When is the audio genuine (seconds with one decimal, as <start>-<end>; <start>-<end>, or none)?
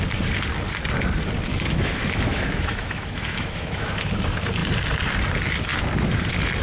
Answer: 0.0-1.5; 4.1-6.6